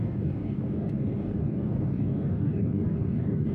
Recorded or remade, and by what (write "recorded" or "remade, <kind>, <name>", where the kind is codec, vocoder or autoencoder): remade, codec, DAC